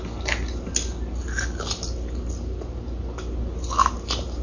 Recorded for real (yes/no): yes